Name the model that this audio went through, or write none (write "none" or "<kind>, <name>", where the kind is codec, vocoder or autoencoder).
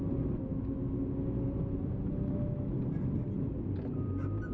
none